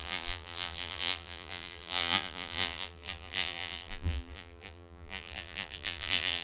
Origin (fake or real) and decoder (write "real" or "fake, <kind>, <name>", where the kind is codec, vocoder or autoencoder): fake, vocoder, BigVGAN v2